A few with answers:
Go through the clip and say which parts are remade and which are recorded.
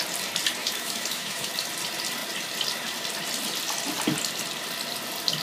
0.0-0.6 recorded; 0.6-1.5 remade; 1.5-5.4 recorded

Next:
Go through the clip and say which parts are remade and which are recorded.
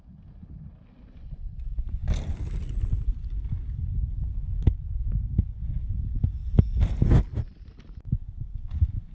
0.0-9.1 recorded